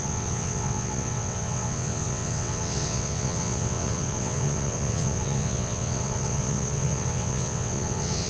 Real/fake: fake